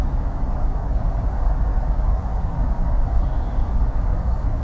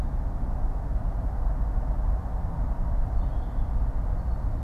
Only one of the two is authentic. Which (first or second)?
second